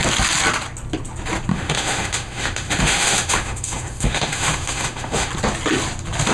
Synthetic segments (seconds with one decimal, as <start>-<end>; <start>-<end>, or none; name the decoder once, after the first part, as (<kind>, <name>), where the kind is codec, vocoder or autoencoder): 1.5-5.3 (autoencoder, DAC-VAE)

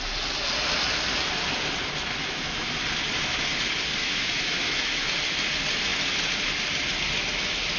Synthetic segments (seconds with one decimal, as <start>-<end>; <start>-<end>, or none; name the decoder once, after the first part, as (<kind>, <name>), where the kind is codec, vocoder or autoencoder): 2.2-2.8 (autoencoder, DAC-VAE); 4.0-5.1

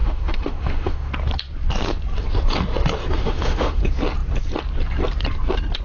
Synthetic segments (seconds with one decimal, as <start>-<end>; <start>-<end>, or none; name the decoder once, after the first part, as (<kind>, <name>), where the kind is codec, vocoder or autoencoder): 0.0-1.1 (autoencoder, DAC-VAE); 3.2-3.8

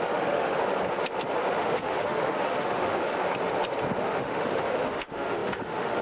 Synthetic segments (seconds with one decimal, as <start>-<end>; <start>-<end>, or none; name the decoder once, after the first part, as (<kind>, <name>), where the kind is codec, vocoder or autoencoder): 0.0-0.6 (autoencoder, DAC-VAE); 1.5-3.1; 4.0-6.0

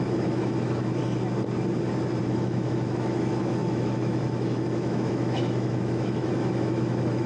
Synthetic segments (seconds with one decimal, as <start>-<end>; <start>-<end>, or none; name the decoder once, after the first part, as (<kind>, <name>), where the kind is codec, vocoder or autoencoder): 0.0-1.0 (autoencoder, DAC-VAE); 2.2-7.3

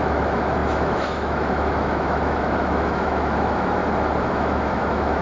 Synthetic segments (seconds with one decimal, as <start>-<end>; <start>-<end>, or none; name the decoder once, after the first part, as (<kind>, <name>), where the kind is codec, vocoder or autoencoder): 0.0-3.8 (autoencoder, DAC-VAE); 4.3-5.2